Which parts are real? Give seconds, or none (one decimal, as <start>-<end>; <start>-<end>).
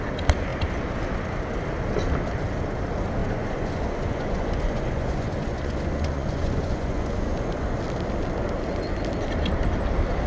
0.0-3.2; 7.8-10.3